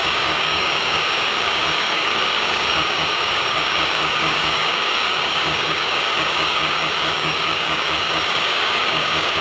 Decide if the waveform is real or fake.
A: fake